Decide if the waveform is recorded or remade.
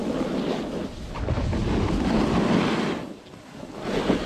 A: recorded